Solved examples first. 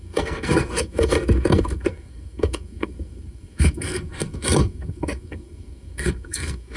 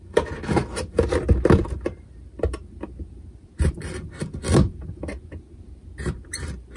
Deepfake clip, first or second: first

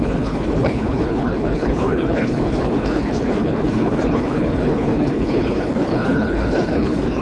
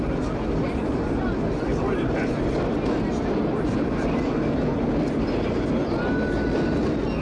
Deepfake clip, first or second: first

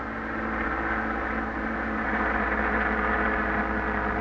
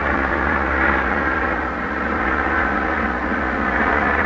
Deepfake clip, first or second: second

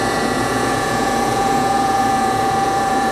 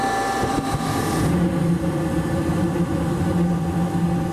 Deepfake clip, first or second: first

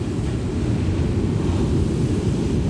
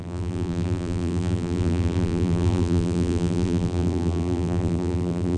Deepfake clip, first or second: second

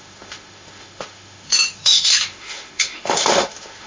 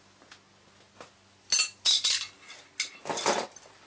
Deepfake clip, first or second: first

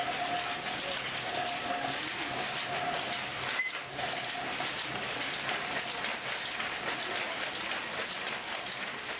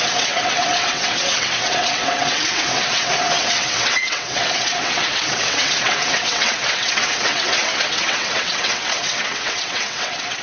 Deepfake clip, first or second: second